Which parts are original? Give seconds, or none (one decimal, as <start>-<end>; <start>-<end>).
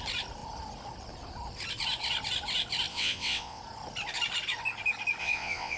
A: 0.0-2.9; 3.6-5.2